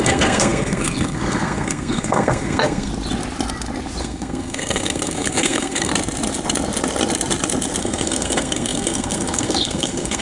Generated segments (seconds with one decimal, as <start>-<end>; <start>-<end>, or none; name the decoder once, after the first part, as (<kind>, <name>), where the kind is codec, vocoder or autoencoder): 0.0-2.9 (codec, SNAC); 4.0-5.9; 7.8-10.2